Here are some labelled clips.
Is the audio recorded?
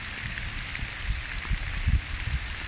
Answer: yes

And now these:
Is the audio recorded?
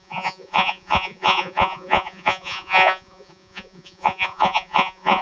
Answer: no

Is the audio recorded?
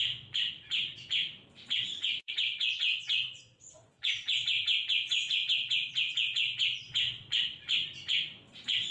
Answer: no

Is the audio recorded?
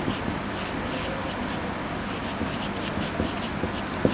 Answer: yes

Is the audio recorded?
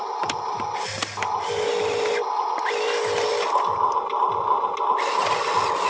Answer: yes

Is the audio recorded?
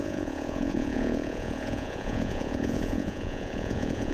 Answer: no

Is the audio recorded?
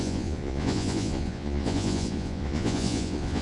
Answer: no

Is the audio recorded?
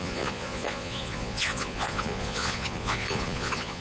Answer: no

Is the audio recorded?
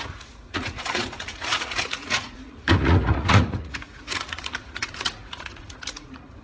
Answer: no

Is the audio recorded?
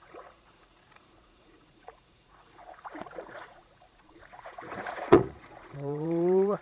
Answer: no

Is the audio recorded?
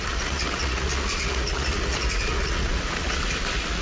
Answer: no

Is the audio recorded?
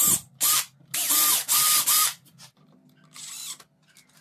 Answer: yes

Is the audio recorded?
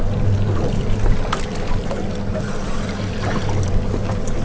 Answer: yes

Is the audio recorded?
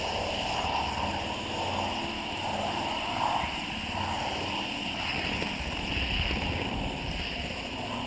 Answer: yes